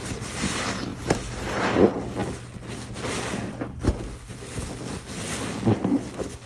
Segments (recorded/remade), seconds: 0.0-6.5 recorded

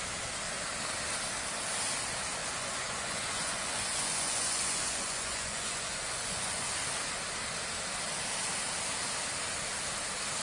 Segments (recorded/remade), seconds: 0.0-2.4 recorded; 2.4-6.7 remade; 6.7-10.4 recorded

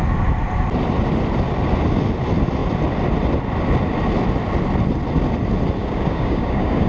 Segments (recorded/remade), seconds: 0.0-5.8 recorded; 5.8-6.9 remade

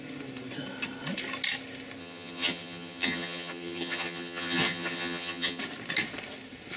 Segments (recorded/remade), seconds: 0.0-2.0 recorded; 2.0-5.6 remade; 5.6-6.8 recorded

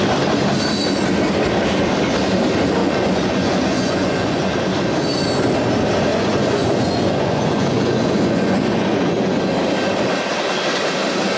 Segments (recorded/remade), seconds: 0.0-2.8 recorded; 2.8-4.6 remade; 4.6-6.1 recorded; 6.1-9.4 remade; 9.4-11.4 recorded

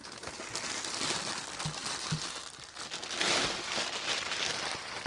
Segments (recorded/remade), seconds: 0.0-5.1 recorded

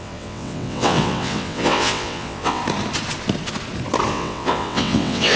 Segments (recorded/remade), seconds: 0.0-2.6 remade; 2.6-4.1 recorded; 4.1-5.4 remade